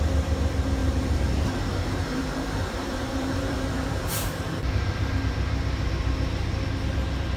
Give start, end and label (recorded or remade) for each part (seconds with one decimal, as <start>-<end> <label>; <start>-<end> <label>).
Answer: 0.0-0.8 recorded; 0.8-5.2 remade; 5.2-7.4 recorded